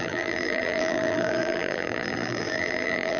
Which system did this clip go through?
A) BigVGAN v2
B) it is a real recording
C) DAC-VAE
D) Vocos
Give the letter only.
A